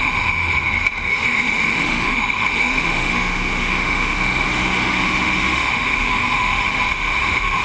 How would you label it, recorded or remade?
remade